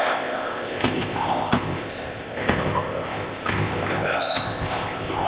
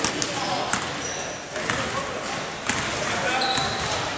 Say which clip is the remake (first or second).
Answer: first